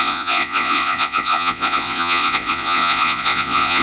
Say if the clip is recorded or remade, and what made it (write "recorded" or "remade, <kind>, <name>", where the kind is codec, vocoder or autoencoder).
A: remade, vocoder, Vocos